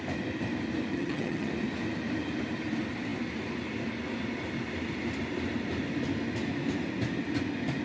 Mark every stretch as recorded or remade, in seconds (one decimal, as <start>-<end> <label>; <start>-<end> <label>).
0.0-0.9 recorded; 0.9-1.5 remade; 1.5-7.8 recorded